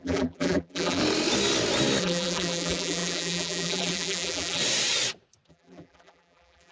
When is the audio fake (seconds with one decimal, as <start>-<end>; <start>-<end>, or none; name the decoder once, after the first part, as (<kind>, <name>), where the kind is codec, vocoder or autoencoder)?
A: 0.0-1.0 (vocoder, BigVGAN v2); 2.0-4.6; 5.5-6.7